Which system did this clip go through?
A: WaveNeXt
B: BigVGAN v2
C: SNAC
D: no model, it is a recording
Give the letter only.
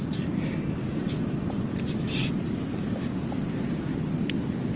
D